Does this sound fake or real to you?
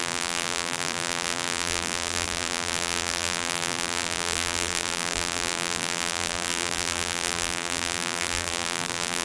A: fake